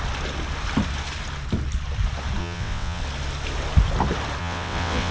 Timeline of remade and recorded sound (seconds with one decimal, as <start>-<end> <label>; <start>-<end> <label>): 0.0-2.4 recorded; 2.4-3.0 remade; 3.0-4.4 recorded; 4.4-5.1 remade